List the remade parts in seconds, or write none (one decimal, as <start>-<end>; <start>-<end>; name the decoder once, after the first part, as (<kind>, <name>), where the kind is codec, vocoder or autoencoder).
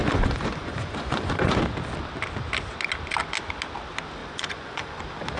0.0-1.6 (vocoder, Vocos); 4.2-5.0